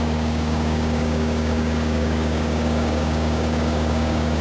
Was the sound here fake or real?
fake